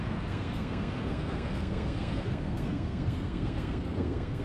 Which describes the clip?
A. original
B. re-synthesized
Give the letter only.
B